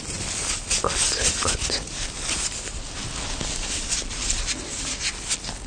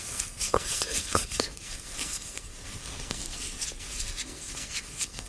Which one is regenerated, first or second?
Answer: second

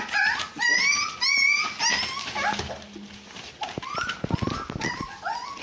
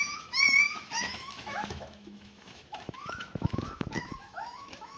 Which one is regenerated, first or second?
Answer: second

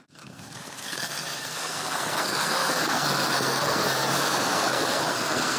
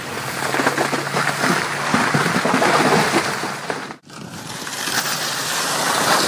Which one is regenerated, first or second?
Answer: first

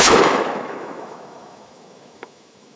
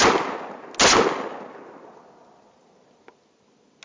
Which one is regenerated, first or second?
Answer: first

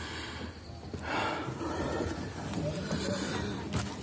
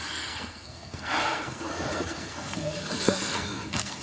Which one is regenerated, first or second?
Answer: second